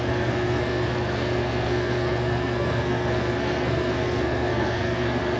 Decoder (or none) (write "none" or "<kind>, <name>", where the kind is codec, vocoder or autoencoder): codec, SNAC